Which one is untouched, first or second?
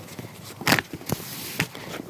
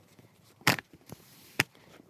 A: first